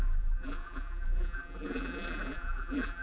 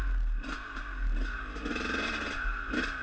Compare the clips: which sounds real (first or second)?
second